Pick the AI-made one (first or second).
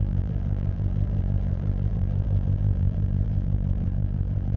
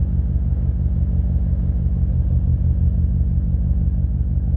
first